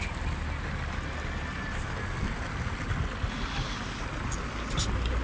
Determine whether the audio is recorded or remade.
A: recorded